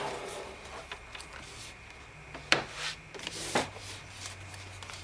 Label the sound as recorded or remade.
recorded